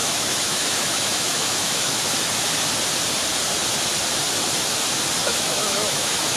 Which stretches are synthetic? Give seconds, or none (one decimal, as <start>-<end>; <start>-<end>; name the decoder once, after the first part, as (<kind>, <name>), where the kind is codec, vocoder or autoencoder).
0.0-2.0 (autoencoder, DAC-VAE); 5.2-6.4